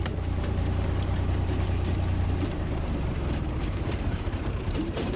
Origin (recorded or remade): remade